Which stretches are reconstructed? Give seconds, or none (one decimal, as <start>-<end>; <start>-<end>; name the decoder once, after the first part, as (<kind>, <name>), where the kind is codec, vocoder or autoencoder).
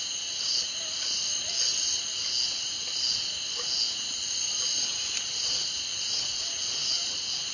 none